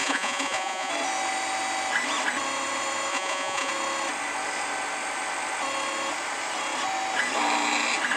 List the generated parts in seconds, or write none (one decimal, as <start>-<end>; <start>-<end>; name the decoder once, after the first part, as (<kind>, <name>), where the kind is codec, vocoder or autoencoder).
0.0-0.9 (vocoder, Vocos); 3.1-3.7